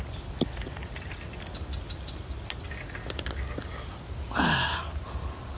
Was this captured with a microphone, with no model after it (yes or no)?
yes